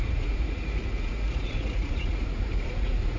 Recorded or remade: remade